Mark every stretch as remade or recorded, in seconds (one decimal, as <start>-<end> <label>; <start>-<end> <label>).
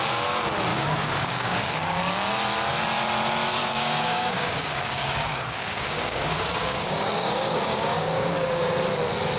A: 0.0-0.7 recorded; 0.7-2.0 remade; 2.0-3.6 recorded; 3.6-8.7 remade; 8.7-9.4 recorded